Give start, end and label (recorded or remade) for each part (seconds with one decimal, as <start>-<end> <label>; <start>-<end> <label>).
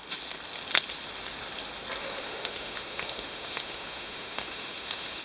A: 0.0-2.0 recorded; 2.0-5.2 remade